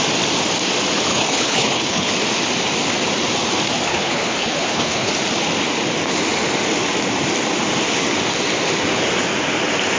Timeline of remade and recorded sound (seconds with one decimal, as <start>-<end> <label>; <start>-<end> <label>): 0.0-1.1 recorded; 1.1-2.1 remade; 2.1-3.9 recorded; 3.9-5.1 remade; 5.1-10.0 recorded